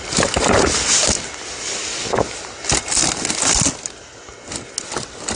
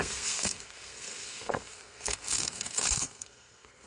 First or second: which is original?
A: first